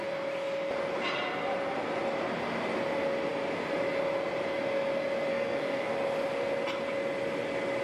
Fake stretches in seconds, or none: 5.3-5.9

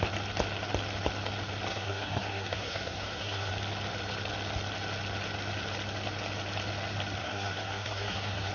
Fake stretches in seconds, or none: 1.7-3.5; 7.2-8.5

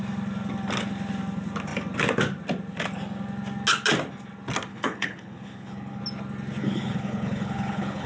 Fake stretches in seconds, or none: 4.7-6.0; 6.6-8.1

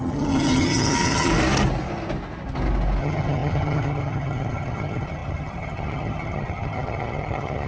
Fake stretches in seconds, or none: 0.0-1.3; 3.0-7.7

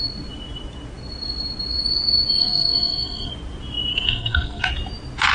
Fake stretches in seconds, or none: 2.4-3.3; 3.9-4.7

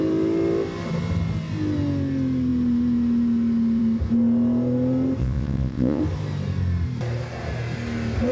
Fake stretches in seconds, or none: 5.2-6.0

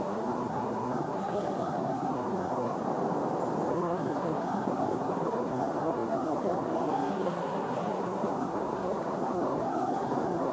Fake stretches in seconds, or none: 0.0-2.8; 3.7-10.5

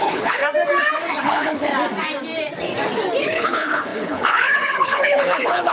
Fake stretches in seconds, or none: 0.0-0.4; 1.2-1.7; 3.2-5.7